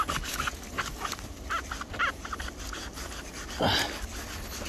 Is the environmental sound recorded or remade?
recorded